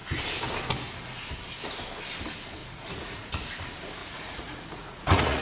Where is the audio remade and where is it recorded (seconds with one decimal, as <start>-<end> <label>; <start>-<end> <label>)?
0.0-2.6 recorded; 2.6-3.3 remade; 3.3-4.0 recorded; 4.0-5.4 remade